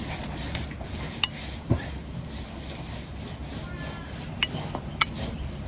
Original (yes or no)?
yes